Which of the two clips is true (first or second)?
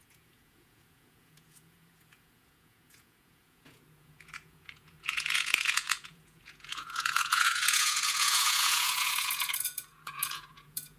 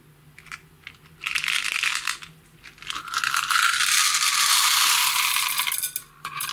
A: second